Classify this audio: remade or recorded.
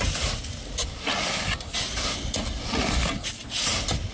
recorded